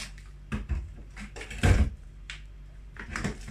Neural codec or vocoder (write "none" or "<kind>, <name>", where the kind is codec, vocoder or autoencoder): vocoder, BigVGAN v2